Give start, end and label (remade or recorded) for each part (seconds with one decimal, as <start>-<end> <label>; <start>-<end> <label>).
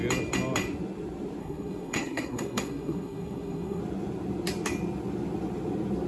0.0-1.4 recorded; 1.4-3.8 remade; 3.8-6.1 recorded